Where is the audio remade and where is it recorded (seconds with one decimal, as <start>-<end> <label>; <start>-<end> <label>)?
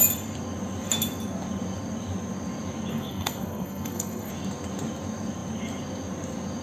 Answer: 0.0-2.9 recorded; 2.9-4.3 remade; 4.3-6.6 recorded